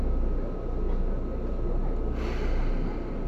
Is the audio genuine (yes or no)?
yes